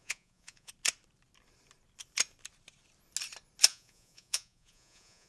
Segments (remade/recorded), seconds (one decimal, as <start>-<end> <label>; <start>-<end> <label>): 0.0-0.7 remade; 0.7-3.7 recorded; 3.7-5.3 remade